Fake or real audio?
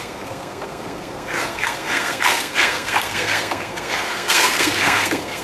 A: fake